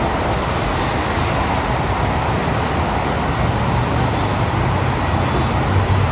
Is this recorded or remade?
recorded